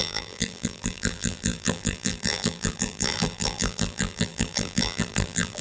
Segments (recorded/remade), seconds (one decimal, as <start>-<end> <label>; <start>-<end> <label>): 0.0-5.6 remade

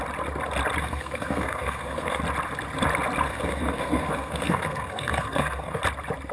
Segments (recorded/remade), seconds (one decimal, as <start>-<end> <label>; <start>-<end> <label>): 0.0-0.8 recorded; 0.8-2.2 remade; 2.2-3.3 recorded; 3.3-5.8 remade; 5.8-6.3 recorded

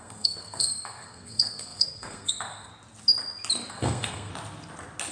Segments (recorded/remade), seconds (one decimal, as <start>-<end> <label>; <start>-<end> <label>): 0.0-2.7 remade; 2.7-3.7 recorded; 3.7-4.3 remade; 4.3-5.1 recorded

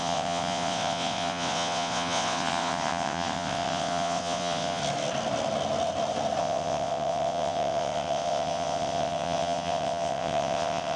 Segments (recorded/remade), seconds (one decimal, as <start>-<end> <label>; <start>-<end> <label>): 0.0-4.8 remade; 4.8-6.4 recorded; 6.4-11.0 remade

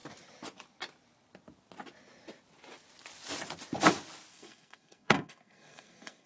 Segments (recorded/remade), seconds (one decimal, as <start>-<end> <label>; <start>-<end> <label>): 0.0-4.3 recorded; 4.3-6.3 remade